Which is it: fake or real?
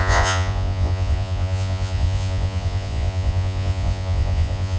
fake